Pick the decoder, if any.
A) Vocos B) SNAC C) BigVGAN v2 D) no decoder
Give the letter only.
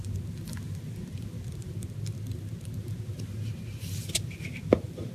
D